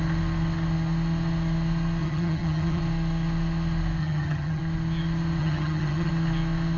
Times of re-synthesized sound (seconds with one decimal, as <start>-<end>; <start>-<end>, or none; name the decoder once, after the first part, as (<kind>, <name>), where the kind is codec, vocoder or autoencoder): 2.0-2.8 (vocoder, HiFi-GAN); 4.0-4.6; 5.4-6.1